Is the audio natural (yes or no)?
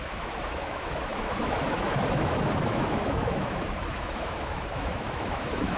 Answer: no